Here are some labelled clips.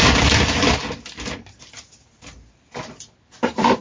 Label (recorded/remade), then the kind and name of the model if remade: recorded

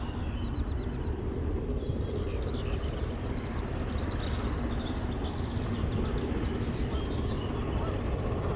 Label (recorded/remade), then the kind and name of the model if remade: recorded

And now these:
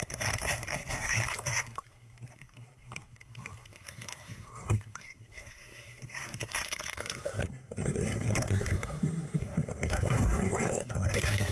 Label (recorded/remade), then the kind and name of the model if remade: remade, codec, SNAC